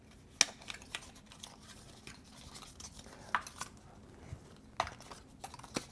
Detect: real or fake real